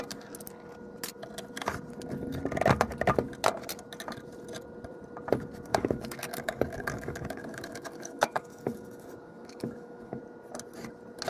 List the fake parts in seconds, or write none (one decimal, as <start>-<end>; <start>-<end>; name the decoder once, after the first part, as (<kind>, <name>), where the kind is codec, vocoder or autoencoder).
5.7-10.2 (codec, DAC)